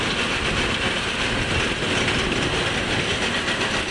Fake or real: real